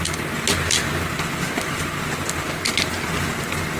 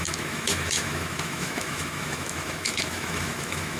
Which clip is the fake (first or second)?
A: second